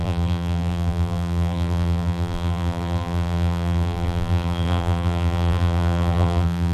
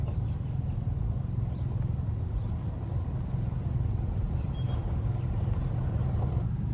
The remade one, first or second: first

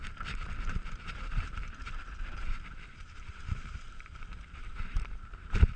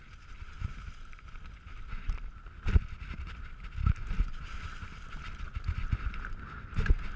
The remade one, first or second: first